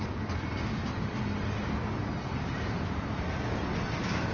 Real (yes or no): yes